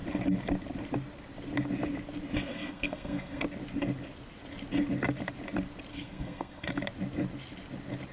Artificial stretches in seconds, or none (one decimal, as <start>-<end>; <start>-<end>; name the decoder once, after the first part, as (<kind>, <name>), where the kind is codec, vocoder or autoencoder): 2.5-3.4 (codec, SNAC); 5.9-6.7